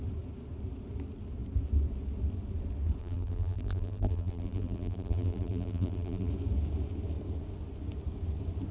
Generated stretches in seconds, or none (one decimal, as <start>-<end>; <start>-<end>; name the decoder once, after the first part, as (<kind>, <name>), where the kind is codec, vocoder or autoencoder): 3.0-6.3 (vocoder, BigVGAN v2)